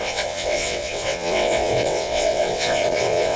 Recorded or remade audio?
remade